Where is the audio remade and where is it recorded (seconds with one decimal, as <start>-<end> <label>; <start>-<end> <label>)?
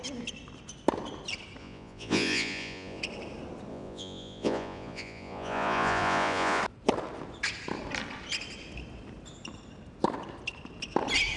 0.0-1.6 recorded; 1.6-3.0 remade; 3.0-3.7 recorded; 3.7-6.6 remade; 6.6-11.4 recorded